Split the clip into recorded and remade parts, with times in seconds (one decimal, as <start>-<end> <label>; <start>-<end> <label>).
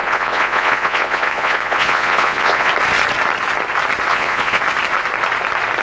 0.0-2.7 remade; 2.7-4.1 recorded; 4.1-4.6 remade; 4.6-5.8 recorded